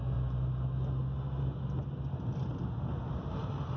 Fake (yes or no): no